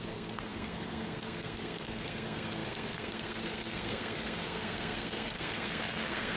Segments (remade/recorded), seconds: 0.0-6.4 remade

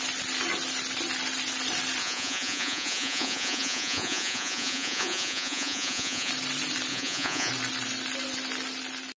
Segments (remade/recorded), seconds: 0.0-2.0 recorded; 2.0-6.3 remade; 6.3-6.9 recorded; 6.9-7.5 remade; 7.5-9.2 recorded

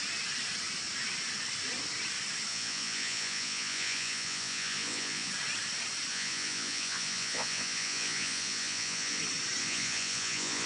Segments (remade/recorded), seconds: 0.0-2.5 recorded; 2.5-5.3 remade; 5.3-6.1 recorded; 6.1-9.2 remade; 9.2-9.6 recorded; 9.6-10.7 remade